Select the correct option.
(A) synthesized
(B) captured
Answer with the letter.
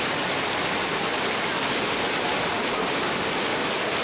B